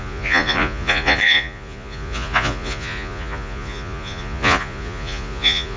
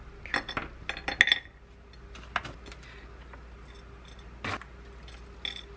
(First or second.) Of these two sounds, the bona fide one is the second